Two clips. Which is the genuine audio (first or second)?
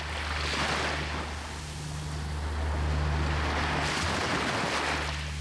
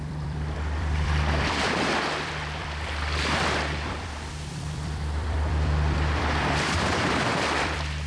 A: first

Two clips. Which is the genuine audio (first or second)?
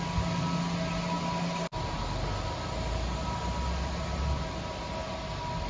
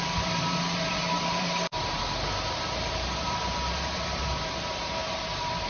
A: first